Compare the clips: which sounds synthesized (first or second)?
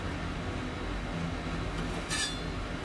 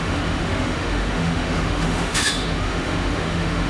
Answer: second